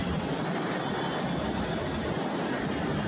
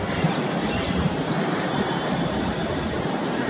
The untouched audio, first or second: first